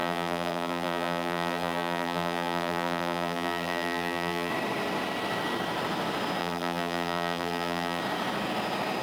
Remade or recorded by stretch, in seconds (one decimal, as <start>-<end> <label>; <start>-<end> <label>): 0.0-4.5 remade; 4.5-6.4 recorded; 6.4-8.0 remade; 8.0-9.0 recorded